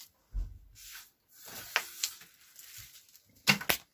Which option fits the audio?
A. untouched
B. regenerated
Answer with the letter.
A